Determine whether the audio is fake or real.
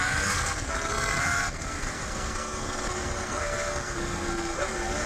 fake